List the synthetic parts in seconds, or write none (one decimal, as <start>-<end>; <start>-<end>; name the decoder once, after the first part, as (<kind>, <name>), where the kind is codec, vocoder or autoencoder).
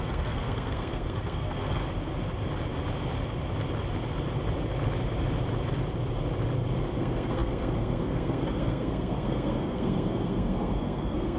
0.0-1.8 (codec, SNAC); 7.0-11.4